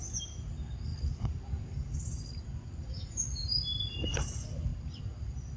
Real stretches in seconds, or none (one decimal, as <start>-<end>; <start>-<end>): 0.0-5.6